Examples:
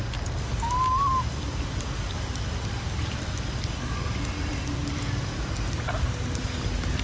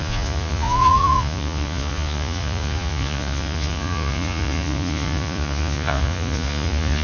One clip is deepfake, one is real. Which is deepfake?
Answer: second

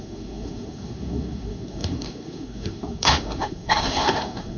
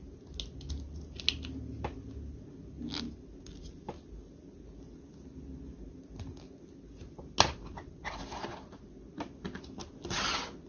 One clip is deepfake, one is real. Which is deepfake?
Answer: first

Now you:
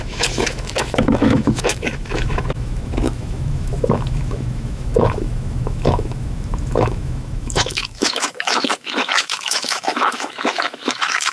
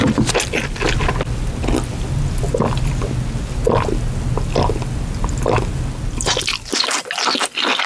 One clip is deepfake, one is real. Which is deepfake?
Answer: first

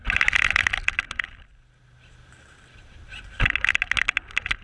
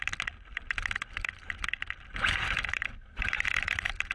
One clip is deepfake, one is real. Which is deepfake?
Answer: second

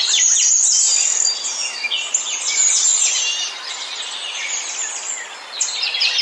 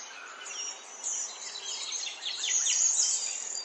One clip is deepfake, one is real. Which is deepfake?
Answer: second